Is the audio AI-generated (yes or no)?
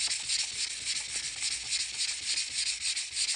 no